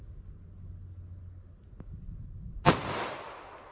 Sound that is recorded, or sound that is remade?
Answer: recorded